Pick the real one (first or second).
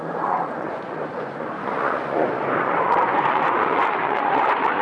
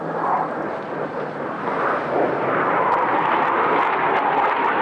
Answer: second